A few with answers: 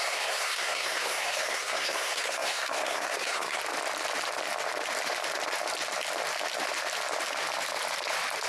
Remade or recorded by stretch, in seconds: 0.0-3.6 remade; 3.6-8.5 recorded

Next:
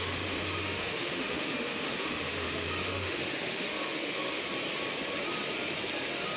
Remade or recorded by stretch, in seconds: 0.0-4.4 remade; 4.4-6.4 recorded

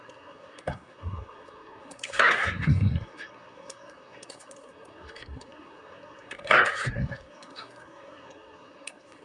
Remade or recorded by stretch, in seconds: 0.0-9.2 remade

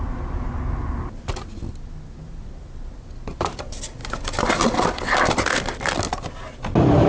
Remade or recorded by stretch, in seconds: 0.0-7.1 recorded

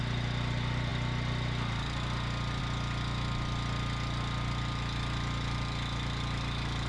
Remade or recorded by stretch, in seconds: 0.0-6.9 recorded